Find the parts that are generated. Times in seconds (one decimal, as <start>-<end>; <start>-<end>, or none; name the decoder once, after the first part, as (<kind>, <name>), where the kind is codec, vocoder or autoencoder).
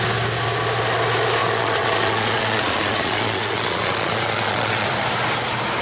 1.4-4.9 (vocoder, Vocos)